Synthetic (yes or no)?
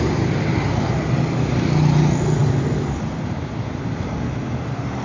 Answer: no